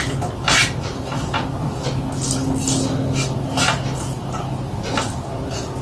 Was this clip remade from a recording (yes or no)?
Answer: no